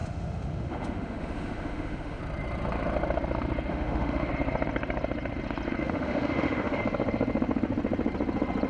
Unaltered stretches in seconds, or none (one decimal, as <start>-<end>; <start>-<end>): 2.2-3.7; 4.3-5.8; 6.8-8.7